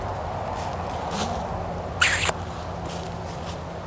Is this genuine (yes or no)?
yes